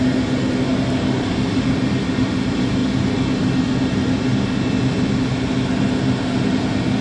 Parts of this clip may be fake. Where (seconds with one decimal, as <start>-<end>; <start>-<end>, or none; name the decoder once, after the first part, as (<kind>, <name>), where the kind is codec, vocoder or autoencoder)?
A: none